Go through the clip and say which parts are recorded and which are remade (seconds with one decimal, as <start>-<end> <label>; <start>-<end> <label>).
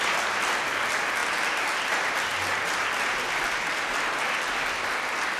0.0-5.4 recorded